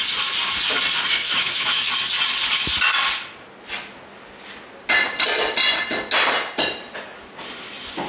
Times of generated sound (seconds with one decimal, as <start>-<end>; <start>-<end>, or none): 1.2-1.9